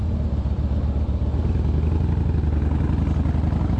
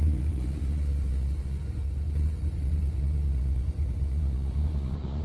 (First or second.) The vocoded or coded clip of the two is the second